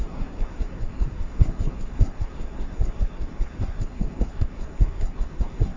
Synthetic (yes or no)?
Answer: yes